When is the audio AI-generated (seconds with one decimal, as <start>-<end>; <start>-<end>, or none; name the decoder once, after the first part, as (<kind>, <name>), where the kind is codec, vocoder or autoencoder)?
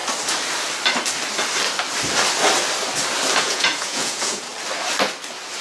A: 3.4-4.5 (vocoder, Vocos)